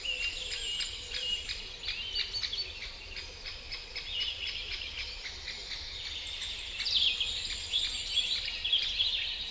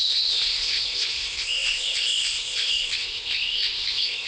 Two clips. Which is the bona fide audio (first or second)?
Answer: first